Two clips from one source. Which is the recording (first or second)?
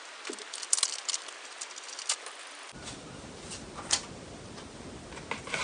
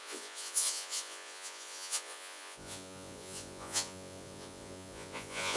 first